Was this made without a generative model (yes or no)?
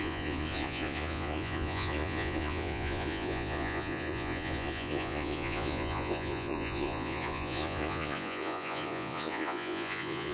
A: no